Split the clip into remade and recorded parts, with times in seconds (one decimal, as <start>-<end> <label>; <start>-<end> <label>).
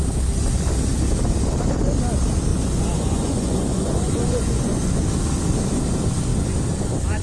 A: 0.0-2.5 recorded; 2.5-4.8 remade; 4.8-7.2 recorded